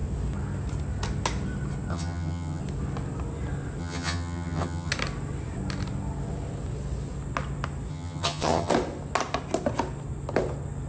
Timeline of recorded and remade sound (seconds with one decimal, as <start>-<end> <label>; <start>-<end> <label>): 0.0-1.9 recorded; 1.9-2.6 remade; 2.6-3.8 recorded; 3.8-4.9 remade; 4.9-7.9 recorded; 7.9-8.7 remade; 8.7-10.9 recorded